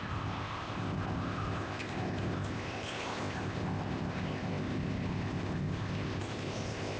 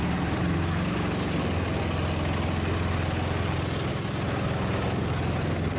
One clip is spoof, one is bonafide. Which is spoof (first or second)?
first